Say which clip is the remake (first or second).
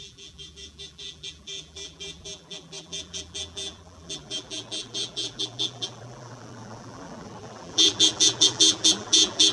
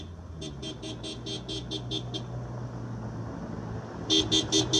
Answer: first